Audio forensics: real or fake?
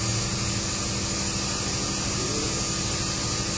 real